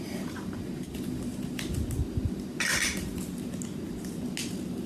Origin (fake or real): real